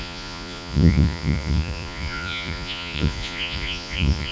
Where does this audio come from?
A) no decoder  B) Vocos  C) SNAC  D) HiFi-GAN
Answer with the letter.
B